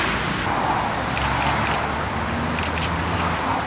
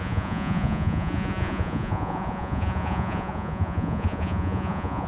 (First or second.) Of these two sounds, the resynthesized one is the second